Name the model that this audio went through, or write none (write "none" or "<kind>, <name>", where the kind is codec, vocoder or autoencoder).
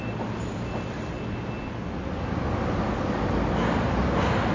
none